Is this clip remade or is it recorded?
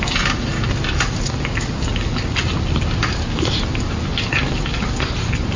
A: recorded